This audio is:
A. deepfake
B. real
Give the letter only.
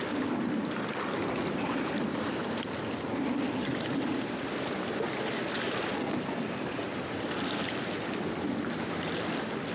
B